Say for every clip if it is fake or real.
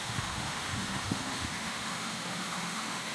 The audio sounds fake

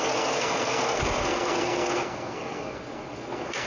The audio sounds fake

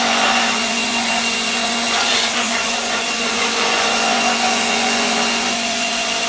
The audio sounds fake